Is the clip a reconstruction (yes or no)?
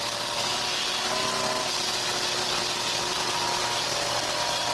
no